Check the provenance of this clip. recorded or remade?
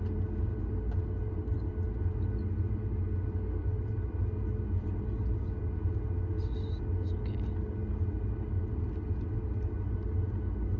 recorded